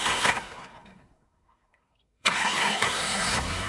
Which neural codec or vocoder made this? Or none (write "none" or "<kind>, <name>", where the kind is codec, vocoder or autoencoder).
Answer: codec, SNAC